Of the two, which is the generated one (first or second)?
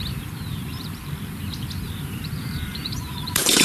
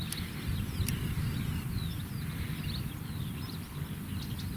first